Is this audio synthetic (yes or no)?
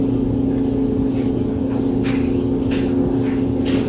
no